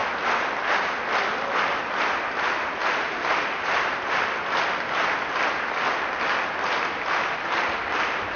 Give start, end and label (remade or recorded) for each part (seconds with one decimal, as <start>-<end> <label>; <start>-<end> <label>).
0.0-2.8 recorded; 2.8-4.0 remade; 4.0-8.4 recorded